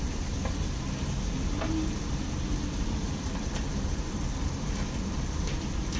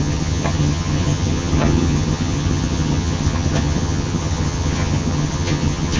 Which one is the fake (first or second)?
second